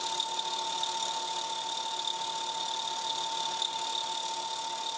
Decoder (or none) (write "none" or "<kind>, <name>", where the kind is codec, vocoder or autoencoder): none